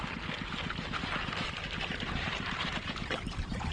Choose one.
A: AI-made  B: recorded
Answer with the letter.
A